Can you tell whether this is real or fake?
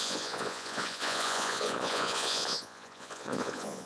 fake